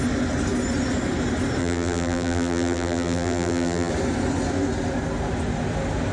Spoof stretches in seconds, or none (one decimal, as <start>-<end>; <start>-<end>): 1.6-3.9